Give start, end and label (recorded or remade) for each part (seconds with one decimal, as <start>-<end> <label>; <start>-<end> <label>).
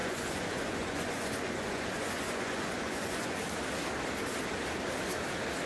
0.0-3.4 remade; 3.4-5.7 recorded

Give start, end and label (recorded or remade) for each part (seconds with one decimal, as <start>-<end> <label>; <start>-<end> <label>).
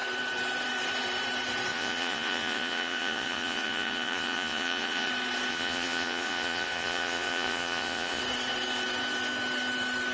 0.0-1.7 recorded; 1.7-5.1 remade; 5.1-5.5 recorded; 5.5-8.2 remade; 8.2-10.1 recorded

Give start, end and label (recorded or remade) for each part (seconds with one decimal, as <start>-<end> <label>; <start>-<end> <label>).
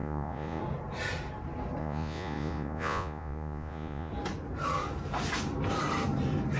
0.0-0.6 remade; 0.6-1.8 recorded; 1.8-4.1 remade; 4.1-6.6 recorded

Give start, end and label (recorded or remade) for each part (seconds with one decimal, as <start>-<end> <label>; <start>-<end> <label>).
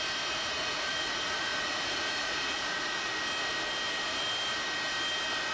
0.0-0.6 recorded; 0.6-3.1 remade; 3.1-5.5 recorded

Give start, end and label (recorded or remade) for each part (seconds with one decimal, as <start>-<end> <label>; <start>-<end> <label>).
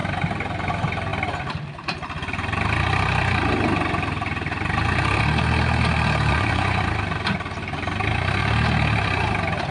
0.0-6.3 recorded; 6.3-6.8 remade; 6.8-9.7 recorded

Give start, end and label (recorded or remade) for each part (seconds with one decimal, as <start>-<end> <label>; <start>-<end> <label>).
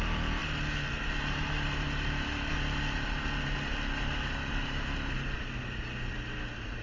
0.0-6.8 recorded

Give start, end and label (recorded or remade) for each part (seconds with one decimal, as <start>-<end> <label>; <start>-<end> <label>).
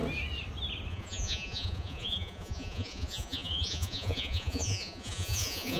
0.0-0.9 recorded; 0.9-5.8 remade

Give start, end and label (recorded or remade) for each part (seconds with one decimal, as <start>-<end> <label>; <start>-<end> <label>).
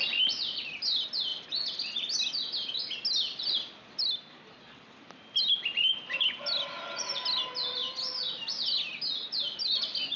0.0-10.2 recorded